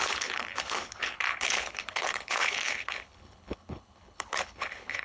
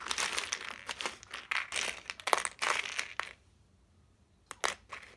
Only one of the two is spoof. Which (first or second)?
first